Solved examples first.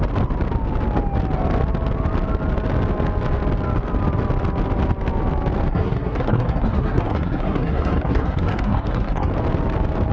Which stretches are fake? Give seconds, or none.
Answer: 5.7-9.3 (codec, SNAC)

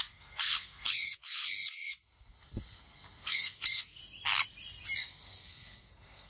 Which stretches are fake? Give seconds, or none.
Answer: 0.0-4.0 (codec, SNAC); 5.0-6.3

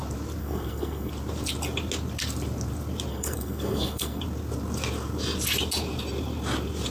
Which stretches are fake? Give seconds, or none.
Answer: 0.4-1.1 (codec, SNAC); 3.1-4.2

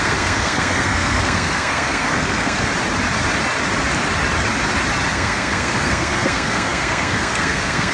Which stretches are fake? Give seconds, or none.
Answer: 0.0-2.7 (codec, SNAC); 5.1-7.9

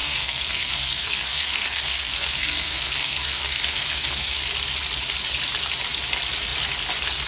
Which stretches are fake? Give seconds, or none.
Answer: 0.0-4.4 (codec, SNAC)

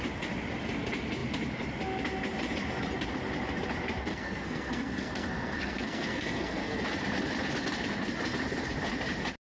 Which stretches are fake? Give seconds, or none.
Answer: 4.1-6.8 (codec, SNAC)

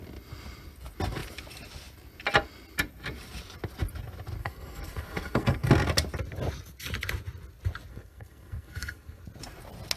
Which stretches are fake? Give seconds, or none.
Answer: 4.4-5.7 (codec, SNAC); 7.9-9.2

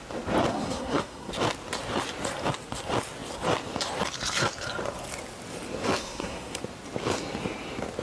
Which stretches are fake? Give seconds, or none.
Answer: 0.5-1.3 (codec, SNAC); 6.0-6.6